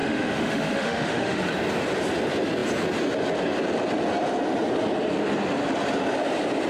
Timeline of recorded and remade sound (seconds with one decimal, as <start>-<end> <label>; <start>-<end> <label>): 0.0-1.4 remade; 1.4-6.7 recorded